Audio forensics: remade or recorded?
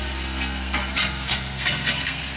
remade